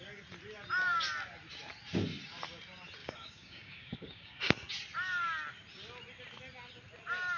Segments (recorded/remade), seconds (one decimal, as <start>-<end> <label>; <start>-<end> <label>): 0.0-3.0 recorded; 3.0-4.4 remade; 4.4-7.4 recorded